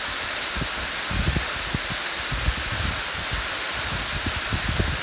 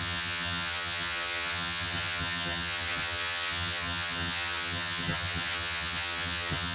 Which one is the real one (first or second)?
first